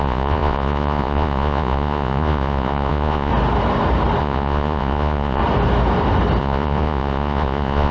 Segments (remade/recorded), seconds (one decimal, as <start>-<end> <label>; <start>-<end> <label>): 0.0-3.3 remade; 3.3-4.2 recorded; 4.2-5.4 remade; 5.4-6.4 recorded; 6.4-7.9 remade